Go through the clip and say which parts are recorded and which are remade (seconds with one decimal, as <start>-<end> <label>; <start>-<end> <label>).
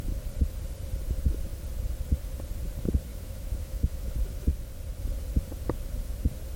0.0-3.1 recorded; 3.1-4.1 remade; 4.1-6.6 recorded